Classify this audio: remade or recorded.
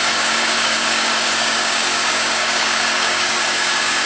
remade